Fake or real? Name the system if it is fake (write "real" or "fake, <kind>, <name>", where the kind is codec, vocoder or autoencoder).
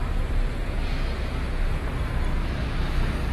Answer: real